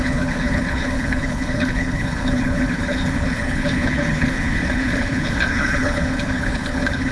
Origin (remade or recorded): remade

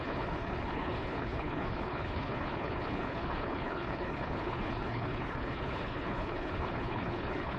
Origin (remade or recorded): remade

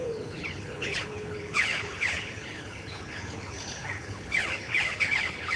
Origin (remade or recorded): remade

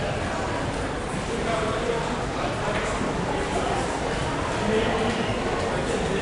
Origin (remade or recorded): recorded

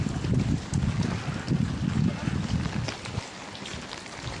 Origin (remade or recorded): recorded